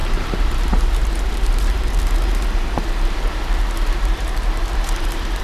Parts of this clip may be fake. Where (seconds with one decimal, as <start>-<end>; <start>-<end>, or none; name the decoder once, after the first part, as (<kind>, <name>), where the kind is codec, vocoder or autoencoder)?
0.0-5.4 (vocoder, BigVGAN v2)